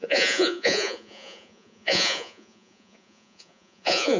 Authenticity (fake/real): fake